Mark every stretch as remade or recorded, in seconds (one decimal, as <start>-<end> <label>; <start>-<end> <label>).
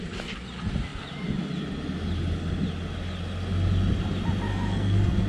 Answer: 0.0-4.5 recorded; 4.5-5.3 remade